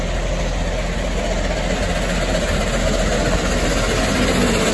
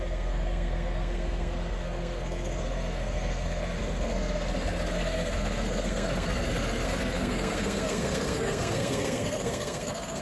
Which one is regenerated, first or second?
second